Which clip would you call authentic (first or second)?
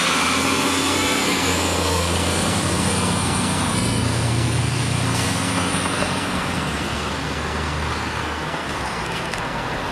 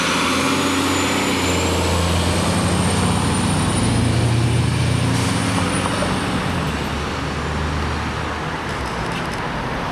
second